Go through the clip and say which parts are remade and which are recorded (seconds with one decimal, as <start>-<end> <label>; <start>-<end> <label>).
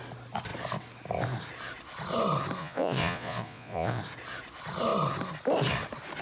0.0-2.6 recorded; 2.6-4.0 remade; 4.0-6.2 recorded